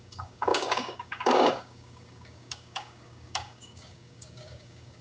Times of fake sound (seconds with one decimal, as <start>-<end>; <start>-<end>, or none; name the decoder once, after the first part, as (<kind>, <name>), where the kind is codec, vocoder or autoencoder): 0.0-5.0 (codec, DAC)